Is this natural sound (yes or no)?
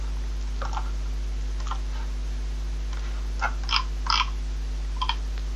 yes